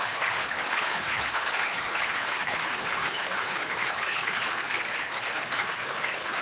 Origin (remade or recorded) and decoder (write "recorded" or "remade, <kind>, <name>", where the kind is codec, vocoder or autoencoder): remade, codec, HILCodec